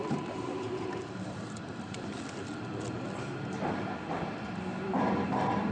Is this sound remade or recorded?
remade